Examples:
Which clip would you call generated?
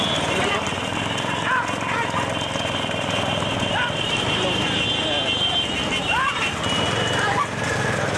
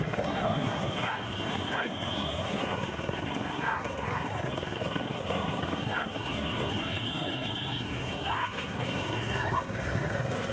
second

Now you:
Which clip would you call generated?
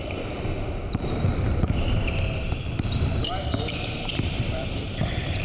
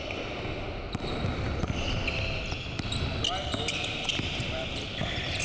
first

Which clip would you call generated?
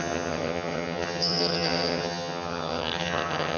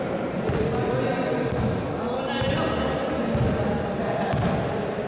first